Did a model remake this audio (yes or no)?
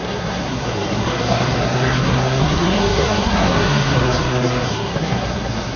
yes